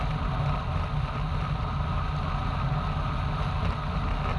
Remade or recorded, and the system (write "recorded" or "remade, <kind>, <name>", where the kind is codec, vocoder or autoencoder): recorded